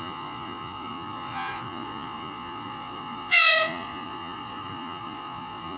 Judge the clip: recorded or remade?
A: remade